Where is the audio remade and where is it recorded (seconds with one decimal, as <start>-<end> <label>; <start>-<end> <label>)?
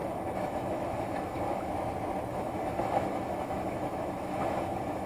0.0-1.7 remade; 1.7-2.3 recorded; 2.3-5.1 remade